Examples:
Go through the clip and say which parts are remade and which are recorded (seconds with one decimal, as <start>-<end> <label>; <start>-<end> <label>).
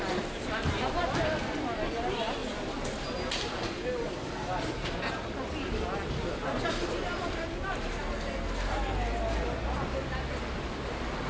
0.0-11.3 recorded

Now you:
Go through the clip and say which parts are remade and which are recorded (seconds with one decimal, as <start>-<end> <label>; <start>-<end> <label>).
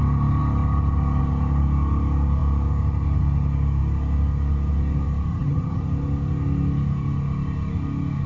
0.0-5.3 recorded; 5.3-5.8 remade; 5.8-8.3 recorded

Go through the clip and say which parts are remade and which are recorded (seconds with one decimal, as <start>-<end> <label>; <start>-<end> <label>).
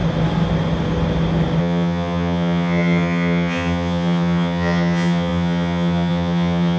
0.0-1.6 recorded; 1.6-6.8 remade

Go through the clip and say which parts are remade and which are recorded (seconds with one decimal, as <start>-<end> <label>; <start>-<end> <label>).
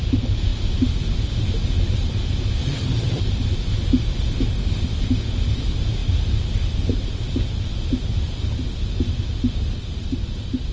0.0-2.6 recorded; 2.6-3.2 remade; 3.2-10.7 recorded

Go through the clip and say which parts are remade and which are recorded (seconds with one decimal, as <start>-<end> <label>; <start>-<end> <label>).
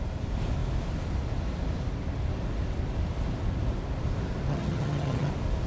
0.0-4.5 recorded; 4.5-5.3 remade; 5.3-5.7 recorded